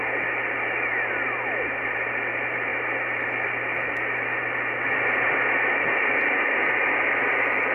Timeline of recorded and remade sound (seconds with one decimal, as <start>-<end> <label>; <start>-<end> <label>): 0.0-7.7 recorded